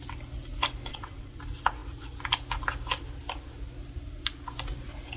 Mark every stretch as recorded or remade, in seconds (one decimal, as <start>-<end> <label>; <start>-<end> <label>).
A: 0.0-0.9 recorded; 0.9-1.4 remade; 1.4-5.2 recorded